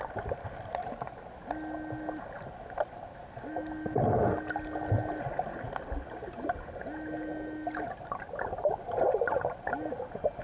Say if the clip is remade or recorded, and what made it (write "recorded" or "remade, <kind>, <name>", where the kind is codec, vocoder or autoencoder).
recorded